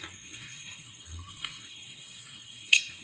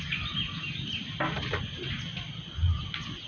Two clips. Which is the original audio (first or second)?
second